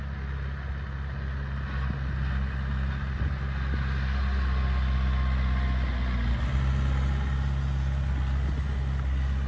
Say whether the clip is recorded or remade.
recorded